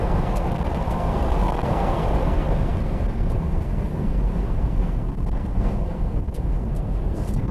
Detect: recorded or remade remade